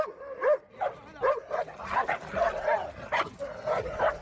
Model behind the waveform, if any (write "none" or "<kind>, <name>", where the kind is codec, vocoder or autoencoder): none